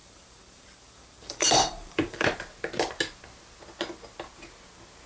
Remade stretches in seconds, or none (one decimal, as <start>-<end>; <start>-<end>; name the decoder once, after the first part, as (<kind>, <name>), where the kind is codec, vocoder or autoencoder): 0.0-2.4 (vocoder, BigVGAN v2)